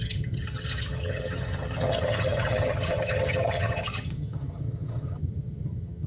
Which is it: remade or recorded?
remade